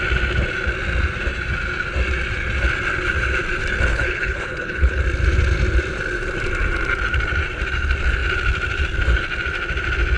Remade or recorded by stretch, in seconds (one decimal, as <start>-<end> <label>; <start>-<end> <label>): 0.0-3.9 recorded; 3.9-5.0 remade; 5.0-10.2 recorded